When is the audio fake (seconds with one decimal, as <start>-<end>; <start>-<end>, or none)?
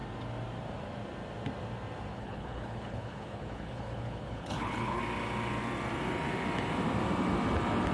2.1-5.0